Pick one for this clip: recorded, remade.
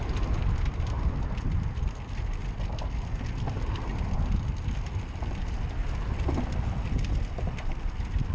recorded